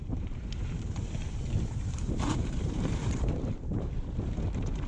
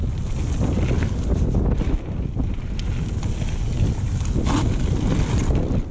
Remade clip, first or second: first